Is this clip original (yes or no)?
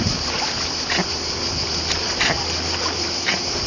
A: yes